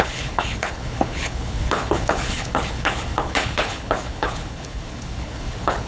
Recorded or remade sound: remade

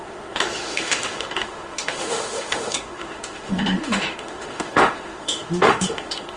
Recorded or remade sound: remade